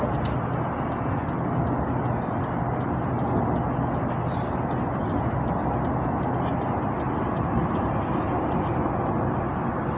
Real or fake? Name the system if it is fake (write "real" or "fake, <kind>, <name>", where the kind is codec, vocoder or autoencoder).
real